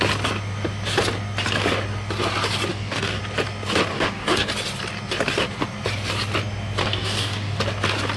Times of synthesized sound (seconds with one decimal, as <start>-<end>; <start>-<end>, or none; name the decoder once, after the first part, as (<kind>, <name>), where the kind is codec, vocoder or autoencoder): 2.7-3.2 (codec, DAC); 3.9-4.5; 6.8-7.6